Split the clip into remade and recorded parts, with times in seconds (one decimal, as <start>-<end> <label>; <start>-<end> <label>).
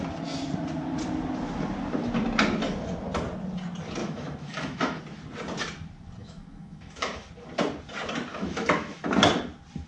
0.0-4.0 recorded; 4.0-5.0 remade; 5.0-6.2 recorded; 6.2-7.3 remade; 7.3-8.3 recorded; 8.3-9.1 remade; 9.1-9.9 recorded